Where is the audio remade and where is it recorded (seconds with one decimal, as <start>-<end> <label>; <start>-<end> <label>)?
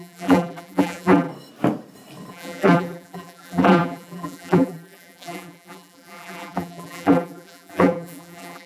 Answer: 0.0-1.3 remade; 1.3-2.3 recorded; 2.3-8.7 remade